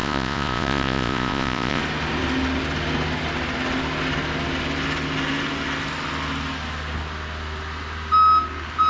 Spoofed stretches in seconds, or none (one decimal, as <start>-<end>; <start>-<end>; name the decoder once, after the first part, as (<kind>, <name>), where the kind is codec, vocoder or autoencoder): 0.0-1.8 (vocoder, Vocos)